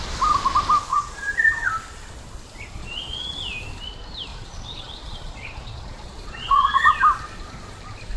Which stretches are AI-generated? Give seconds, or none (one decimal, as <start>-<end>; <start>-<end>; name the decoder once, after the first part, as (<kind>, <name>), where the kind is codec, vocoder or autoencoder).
0.9-1.7 (vocoder, Vocos); 2.8-3.4; 4.3-6.9